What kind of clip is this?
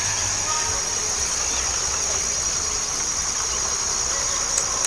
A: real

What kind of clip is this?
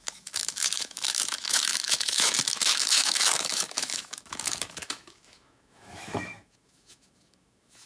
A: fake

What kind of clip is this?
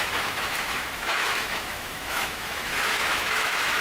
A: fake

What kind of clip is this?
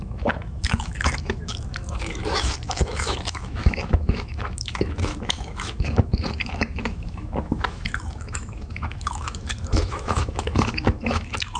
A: fake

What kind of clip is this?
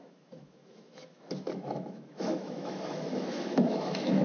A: fake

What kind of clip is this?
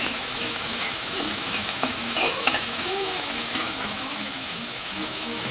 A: fake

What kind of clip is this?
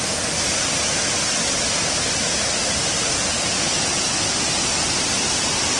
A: real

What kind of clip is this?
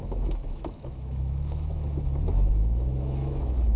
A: fake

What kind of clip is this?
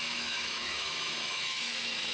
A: fake